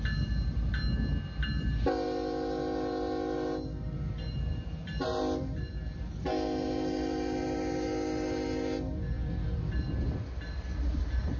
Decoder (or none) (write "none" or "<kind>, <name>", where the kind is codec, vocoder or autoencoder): none